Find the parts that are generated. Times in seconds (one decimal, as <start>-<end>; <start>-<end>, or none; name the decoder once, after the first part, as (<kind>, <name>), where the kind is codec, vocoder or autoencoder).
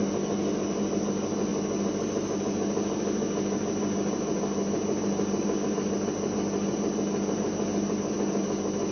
none